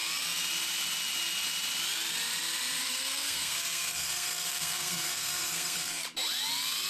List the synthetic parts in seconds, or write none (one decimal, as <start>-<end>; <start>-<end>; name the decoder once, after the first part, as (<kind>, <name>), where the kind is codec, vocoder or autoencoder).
2.8-6.0 (codec, SNAC)